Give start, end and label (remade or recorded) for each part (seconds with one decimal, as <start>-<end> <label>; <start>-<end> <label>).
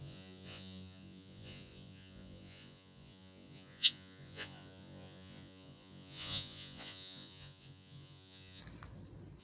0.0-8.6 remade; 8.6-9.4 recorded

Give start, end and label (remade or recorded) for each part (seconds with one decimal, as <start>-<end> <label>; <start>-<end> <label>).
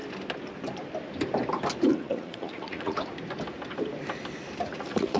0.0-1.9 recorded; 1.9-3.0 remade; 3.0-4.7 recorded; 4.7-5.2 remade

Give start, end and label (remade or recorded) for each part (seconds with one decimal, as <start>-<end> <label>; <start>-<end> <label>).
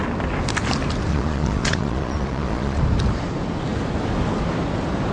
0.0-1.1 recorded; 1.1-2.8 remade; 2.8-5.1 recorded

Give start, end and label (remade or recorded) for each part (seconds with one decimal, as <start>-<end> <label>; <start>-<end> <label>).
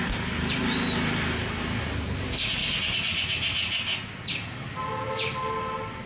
0.0-6.1 recorded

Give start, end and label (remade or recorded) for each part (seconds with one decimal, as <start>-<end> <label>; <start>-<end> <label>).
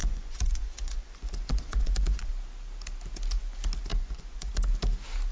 0.0-2.3 remade; 2.3-3.9 recorded; 3.9-4.5 remade; 4.5-5.3 recorded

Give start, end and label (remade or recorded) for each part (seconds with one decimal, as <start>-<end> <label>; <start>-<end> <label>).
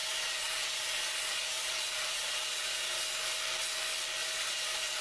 0.0-2.9 remade; 2.9-4.2 recorded; 4.2-5.0 remade